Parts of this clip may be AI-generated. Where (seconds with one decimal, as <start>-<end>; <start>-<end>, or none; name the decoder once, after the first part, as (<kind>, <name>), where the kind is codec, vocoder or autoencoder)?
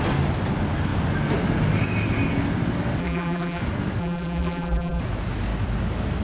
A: 3.0-3.6 (vocoder, BigVGAN v2); 4.0-5.0